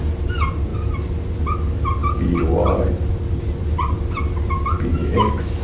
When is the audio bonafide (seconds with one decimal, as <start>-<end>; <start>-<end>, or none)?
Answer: 0.0-5.0